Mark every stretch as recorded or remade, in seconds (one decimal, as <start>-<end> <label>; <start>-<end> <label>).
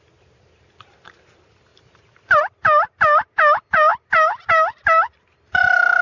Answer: 0.0-6.0 remade